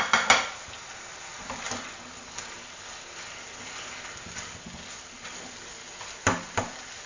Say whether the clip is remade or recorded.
recorded